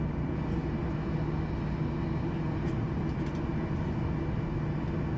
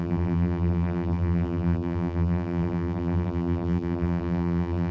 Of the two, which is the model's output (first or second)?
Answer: second